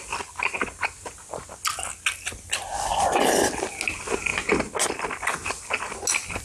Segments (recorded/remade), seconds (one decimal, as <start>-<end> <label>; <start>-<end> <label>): 0.0-6.4 recorded